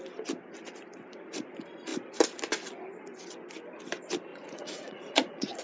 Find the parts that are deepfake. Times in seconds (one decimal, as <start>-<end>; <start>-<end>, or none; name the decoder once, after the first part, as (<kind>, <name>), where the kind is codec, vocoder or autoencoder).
4.3-5.6 (vocoder, Vocos)